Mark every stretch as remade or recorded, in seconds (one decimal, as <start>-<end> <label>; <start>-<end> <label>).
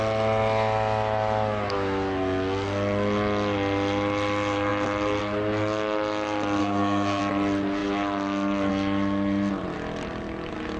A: 0.0-6.6 recorded; 6.6-7.2 remade; 7.2-10.8 recorded